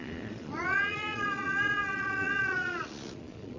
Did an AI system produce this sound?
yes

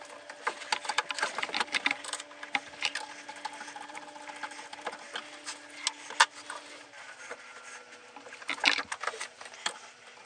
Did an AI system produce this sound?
no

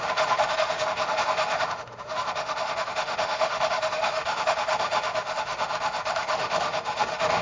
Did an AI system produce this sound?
yes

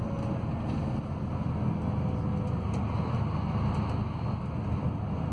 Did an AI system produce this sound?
no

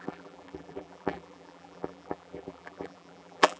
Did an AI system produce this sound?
yes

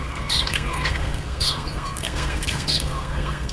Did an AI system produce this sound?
yes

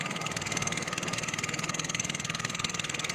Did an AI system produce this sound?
yes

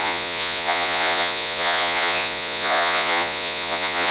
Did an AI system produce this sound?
yes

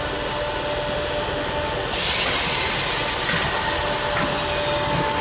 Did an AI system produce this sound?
no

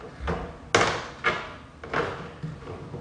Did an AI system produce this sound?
no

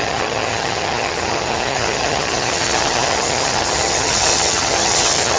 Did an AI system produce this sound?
yes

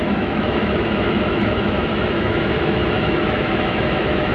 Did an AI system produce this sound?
yes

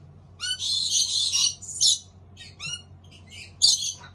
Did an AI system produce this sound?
no